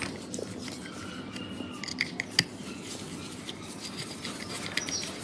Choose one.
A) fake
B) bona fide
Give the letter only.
B